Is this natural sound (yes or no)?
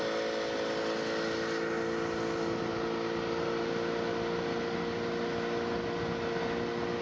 yes